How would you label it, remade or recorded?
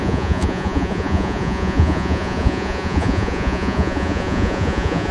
remade